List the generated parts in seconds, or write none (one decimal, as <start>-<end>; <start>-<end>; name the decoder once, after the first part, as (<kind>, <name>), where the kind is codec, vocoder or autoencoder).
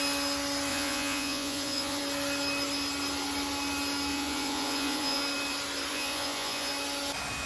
0.7-2.0 (vocoder, Vocos); 4.1-5.2; 5.9-6.7